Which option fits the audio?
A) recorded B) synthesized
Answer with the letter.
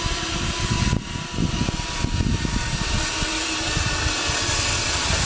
A